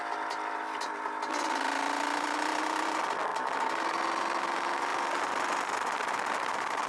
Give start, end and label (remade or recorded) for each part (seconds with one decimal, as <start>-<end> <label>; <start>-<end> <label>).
0.0-6.9 recorded